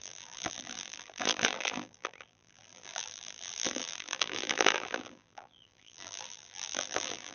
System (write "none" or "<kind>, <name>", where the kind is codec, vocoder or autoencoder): vocoder, BigVGAN v2